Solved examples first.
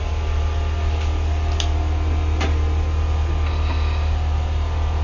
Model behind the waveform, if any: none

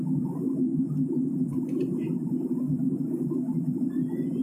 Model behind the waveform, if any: none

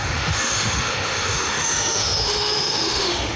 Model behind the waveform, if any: autoencoder, DAC-VAE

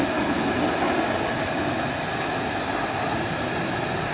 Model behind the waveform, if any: none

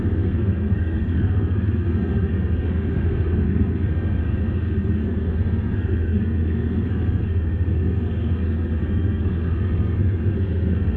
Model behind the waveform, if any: codec, SNAC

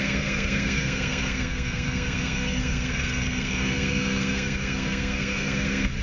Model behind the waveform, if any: codec, SNAC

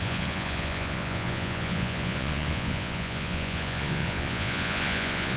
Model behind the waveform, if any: vocoder, Vocos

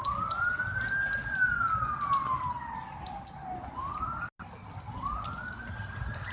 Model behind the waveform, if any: none